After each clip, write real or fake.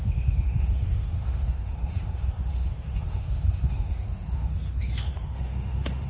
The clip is fake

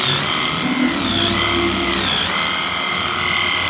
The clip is real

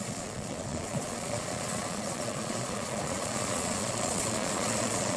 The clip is fake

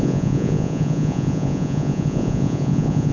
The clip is fake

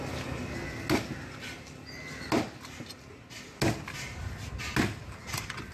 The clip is real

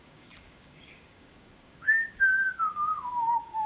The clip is fake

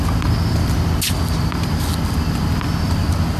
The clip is real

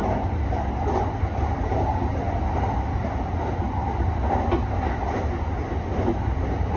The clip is real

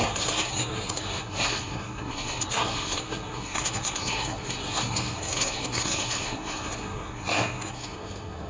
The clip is fake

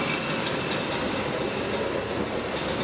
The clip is real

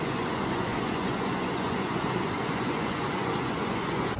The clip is fake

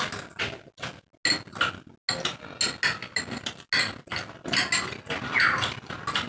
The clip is real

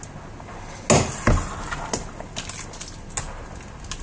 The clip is real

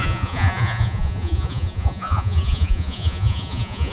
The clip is fake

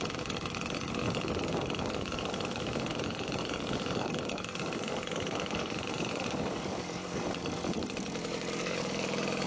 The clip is fake